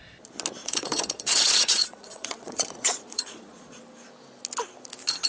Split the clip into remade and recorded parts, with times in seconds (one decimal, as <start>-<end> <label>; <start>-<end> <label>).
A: 0.0-0.6 recorded; 0.6-3.8 remade; 3.8-5.3 recorded